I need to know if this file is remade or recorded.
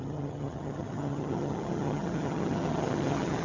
remade